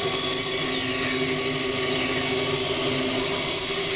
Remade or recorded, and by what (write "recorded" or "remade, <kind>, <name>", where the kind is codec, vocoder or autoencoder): recorded